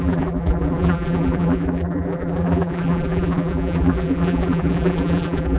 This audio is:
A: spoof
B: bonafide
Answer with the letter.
A